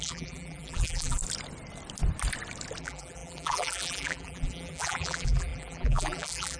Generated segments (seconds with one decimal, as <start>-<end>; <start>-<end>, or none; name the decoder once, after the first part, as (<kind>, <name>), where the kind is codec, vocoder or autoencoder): 0.0-1.2 (vocoder, BigVGAN v2); 2.8-6.6